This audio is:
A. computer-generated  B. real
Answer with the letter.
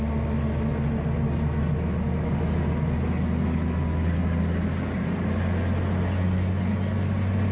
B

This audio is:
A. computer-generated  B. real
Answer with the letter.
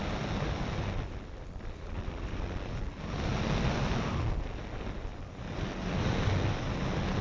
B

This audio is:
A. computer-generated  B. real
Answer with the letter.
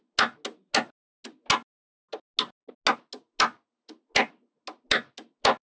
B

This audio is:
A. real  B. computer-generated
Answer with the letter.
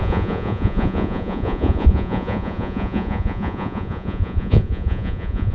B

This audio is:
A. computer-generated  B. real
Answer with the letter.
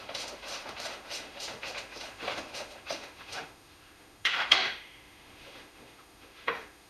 A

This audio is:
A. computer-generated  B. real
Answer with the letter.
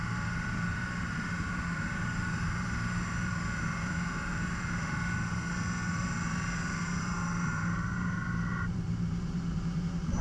A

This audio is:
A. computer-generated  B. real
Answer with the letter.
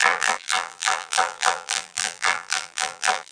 A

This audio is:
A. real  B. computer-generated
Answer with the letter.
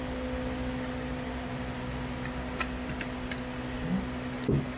A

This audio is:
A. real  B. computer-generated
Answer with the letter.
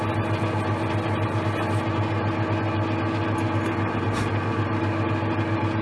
A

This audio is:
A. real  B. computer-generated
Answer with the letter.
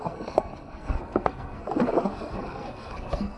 B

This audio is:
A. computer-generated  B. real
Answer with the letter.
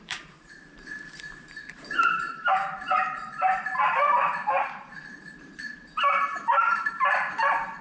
A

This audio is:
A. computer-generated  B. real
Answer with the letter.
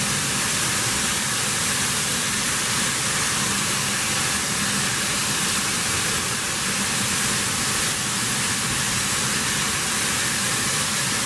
B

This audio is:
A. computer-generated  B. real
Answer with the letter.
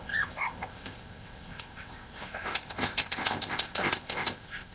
A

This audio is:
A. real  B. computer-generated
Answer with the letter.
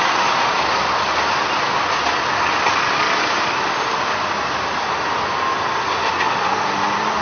A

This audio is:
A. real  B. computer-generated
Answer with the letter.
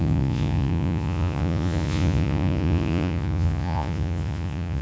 B